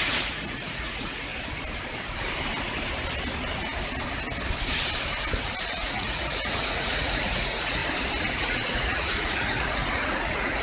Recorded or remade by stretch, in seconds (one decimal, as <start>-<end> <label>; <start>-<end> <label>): 0.0-1.3 remade; 1.3-5.4 recorded; 5.4-7.8 remade; 7.8-8.3 recorded; 8.3-10.6 remade

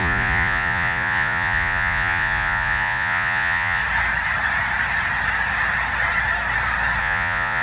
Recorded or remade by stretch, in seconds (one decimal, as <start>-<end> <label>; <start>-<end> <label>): 0.0-3.8 remade; 3.8-7.0 recorded; 7.0-7.6 remade